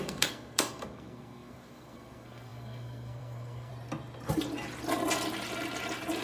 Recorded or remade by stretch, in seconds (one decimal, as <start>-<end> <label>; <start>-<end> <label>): 0.0-3.7 remade; 3.7-6.2 recorded